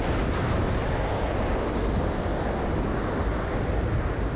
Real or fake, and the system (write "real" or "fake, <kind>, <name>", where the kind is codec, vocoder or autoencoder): real